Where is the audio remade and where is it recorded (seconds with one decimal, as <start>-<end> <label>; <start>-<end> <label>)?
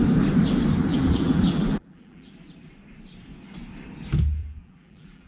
0.0-0.9 recorded; 0.9-2.3 remade; 2.3-4.4 recorded; 4.4-5.3 remade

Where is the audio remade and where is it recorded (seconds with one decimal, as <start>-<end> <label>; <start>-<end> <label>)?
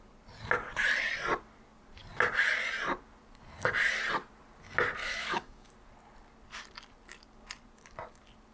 0.0-5.0 recorded; 5.0-5.7 remade; 5.7-8.5 recorded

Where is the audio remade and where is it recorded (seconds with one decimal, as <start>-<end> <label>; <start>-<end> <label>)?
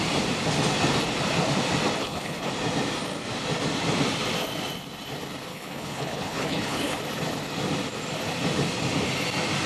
0.0-2.0 recorded; 2.0-2.5 remade; 2.5-5.5 recorded; 5.5-7.0 remade; 7.0-9.7 recorded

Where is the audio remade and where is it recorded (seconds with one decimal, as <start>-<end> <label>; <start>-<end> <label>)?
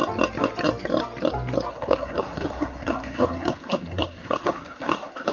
0.0-1.7 recorded; 1.7-5.3 remade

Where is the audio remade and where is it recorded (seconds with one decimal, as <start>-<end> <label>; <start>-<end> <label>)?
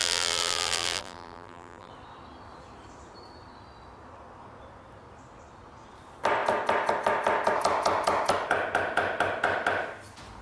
0.0-1.9 remade; 1.9-10.4 recorded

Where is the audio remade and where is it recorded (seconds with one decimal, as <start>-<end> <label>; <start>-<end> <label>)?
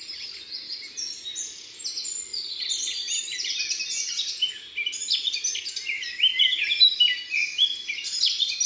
0.0-8.7 recorded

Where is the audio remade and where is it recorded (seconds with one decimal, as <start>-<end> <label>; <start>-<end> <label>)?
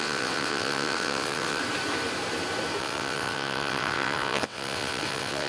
0.0-1.6 remade; 1.6-2.8 recorded; 2.8-5.5 remade